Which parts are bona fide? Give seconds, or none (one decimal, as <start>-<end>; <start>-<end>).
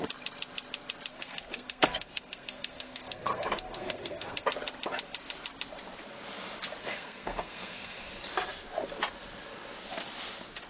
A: 0.0-1.1; 4.5-6.8; 8.0-10.7